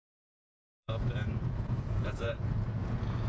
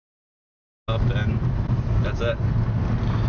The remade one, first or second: first